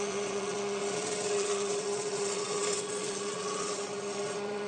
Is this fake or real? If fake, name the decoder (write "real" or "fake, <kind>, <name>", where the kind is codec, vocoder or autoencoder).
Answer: fake, vocoder, Vocos